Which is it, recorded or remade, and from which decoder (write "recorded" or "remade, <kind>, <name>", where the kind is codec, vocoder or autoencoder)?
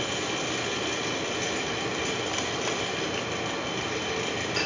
recorded